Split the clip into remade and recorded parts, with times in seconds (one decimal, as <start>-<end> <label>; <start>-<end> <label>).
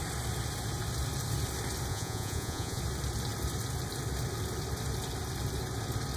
0.0-1.9 recorded; 1.9-2.8 remade; 2.8-6.2 recorded